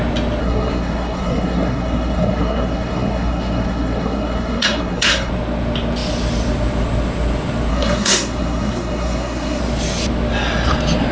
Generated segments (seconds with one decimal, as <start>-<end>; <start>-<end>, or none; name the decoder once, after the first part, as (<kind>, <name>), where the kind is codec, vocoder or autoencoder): 0.4-5.3 (codec, SNAC); 7.7-9.6